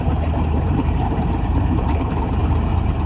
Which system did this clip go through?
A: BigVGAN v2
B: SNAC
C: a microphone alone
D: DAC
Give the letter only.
A